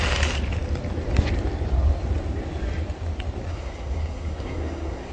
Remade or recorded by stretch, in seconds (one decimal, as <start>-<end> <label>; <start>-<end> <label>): 0.0-3.5 recorded; 3.5-5.1 remade